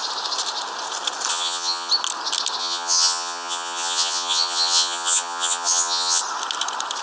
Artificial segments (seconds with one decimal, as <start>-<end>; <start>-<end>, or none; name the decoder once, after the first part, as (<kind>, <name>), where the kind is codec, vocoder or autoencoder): 1.3-1.9 (vocoder, HiFi-GAN); 2.6-6.2